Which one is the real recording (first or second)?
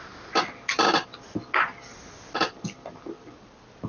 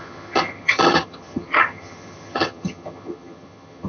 first